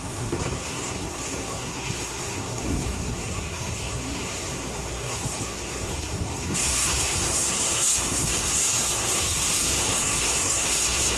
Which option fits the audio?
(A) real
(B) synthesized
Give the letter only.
B